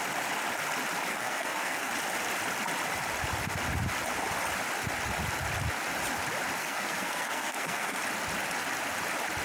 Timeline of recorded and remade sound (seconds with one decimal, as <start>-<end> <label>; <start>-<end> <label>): 0.0-1.1 recorded; 1.1-1.9 remade; 1.9-6.6 recorded; 6.6-8.0 remade; 8.0-9.4 recorded